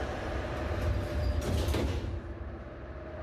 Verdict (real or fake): real